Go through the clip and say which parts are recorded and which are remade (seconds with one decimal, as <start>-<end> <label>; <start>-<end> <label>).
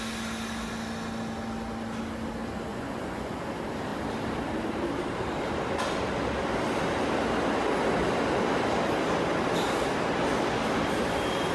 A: 0.0-2.7 recorded; 2.7-3.4 remade; 3.4-11.5 recorded